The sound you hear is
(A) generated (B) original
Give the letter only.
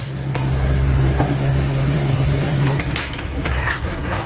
A